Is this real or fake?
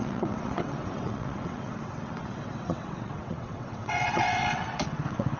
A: fake